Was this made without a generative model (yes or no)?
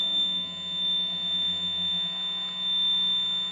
yes